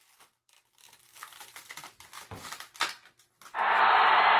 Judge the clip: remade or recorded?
recorded